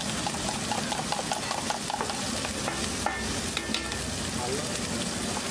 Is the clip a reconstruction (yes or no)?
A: no